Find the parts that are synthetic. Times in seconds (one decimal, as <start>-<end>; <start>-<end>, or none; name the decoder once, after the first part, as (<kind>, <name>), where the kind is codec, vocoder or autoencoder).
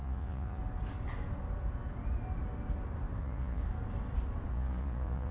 0.0-0.6 (vocoder, Vocos); 3.2-3.6; 4.5-5.3